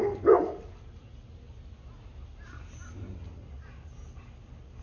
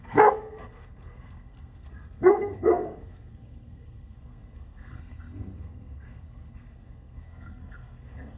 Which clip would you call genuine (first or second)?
first